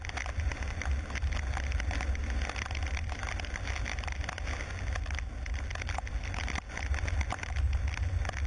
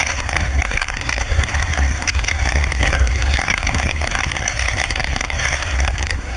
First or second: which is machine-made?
second